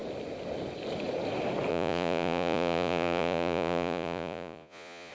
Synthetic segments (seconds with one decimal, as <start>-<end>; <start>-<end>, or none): 1.7-5.1